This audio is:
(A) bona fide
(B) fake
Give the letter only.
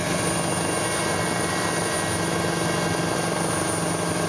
A